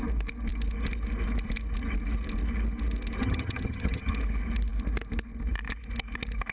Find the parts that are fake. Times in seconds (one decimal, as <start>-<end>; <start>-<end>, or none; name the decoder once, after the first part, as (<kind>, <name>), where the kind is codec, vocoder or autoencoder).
3.2-4.1 (vocoder, HiFi-GAN)